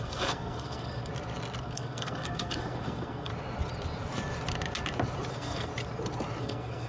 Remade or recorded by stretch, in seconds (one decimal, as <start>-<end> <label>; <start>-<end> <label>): 0.0-1.1 remade; 1.1-1.6 recorded; 1.6-3.3 remade; 3.3-5.3 recorded; 5.3-5.7 remade; 5.7-6.4 recorded; 6.4-6.9 remade